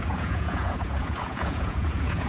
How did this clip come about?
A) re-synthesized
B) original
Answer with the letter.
A